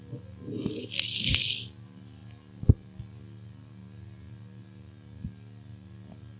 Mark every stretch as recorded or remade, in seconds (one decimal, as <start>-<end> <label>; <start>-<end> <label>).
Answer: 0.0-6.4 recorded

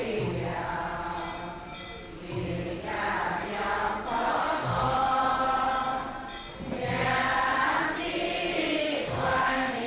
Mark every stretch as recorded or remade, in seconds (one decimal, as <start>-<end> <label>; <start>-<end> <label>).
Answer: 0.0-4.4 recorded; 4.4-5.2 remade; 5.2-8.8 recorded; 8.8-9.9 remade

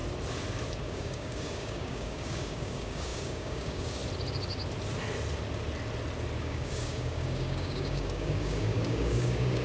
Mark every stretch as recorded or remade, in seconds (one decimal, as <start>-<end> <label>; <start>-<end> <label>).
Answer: 0.0-0.8 recorded; 0.8-4.0 remade; 4.0-6.4 recorded; 6.4-9.6 remade